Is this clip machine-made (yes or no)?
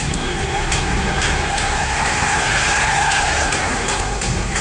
yes